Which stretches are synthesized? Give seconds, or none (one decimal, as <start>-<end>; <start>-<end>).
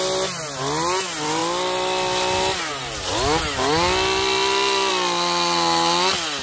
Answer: none